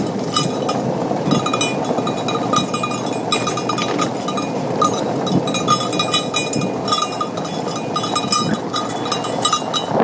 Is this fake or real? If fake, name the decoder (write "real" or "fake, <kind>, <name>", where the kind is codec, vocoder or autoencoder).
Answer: real